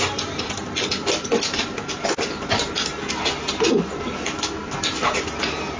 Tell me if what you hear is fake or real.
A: real